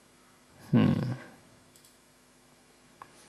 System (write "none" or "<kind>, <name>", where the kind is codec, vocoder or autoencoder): autoencoder, DAC-VAE